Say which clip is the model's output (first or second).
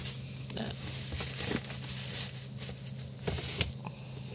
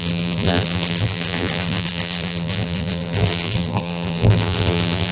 second